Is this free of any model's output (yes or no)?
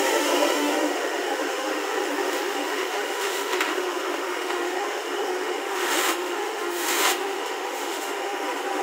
no